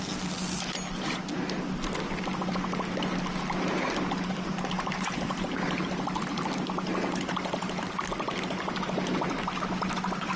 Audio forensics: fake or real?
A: real